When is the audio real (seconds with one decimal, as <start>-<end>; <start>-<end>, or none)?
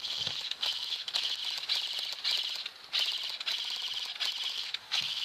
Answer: 1.4-4.5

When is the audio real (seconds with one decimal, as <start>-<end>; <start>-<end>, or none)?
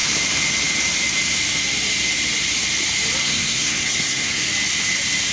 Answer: 0.0-3.2; 4.4-5.3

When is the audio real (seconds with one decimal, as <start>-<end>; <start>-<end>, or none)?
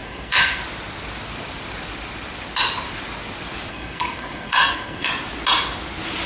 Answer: 0.6-3.7; 5.1-6.3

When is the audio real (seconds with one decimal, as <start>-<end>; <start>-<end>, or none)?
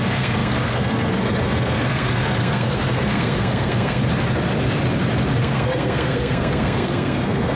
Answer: 4.0-5.4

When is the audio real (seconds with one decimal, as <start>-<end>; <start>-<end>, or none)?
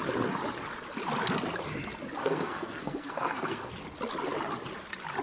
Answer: 0.0-2.2; 3.7-5.2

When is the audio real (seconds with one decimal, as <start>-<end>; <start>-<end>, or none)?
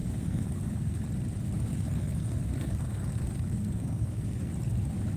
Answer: 1.0-1.7; 4.5-5.2